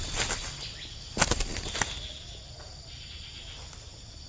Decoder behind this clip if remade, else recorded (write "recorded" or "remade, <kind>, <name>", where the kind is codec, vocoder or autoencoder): recorded